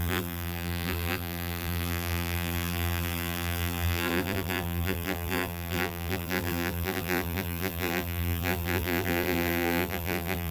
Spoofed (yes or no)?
yes